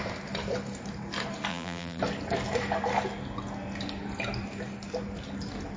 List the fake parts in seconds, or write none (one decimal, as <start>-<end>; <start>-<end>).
1.5-2.0